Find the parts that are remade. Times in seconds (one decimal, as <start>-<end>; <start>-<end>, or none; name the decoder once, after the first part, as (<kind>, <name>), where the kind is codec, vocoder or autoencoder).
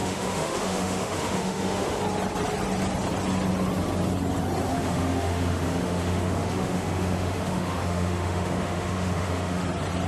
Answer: 0.0-2.0 (autoencoder, DAC-VAE); 4.7-9.6